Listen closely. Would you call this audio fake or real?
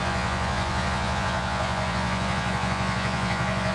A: fake